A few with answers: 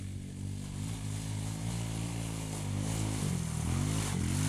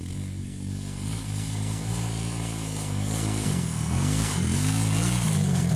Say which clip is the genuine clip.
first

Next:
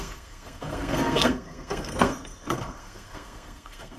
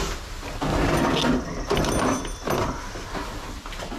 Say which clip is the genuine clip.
second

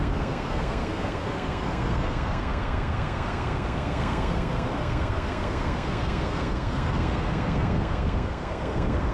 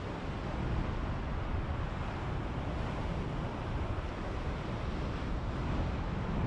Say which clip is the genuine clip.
second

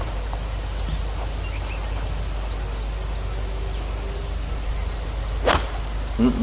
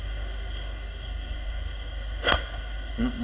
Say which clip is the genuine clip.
first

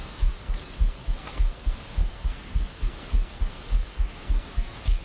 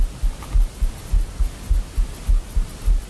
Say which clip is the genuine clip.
second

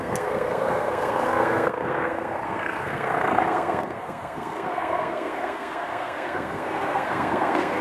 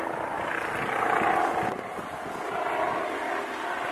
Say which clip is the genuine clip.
second